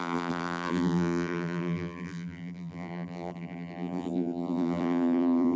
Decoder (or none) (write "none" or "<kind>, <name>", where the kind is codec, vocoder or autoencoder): vocoder, BigVGAN v2